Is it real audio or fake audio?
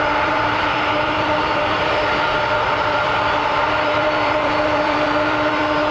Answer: fake